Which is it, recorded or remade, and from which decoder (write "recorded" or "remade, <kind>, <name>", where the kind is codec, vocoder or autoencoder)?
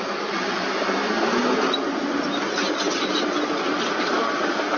recorded